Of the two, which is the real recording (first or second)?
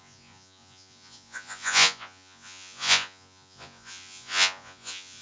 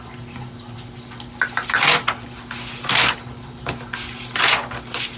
second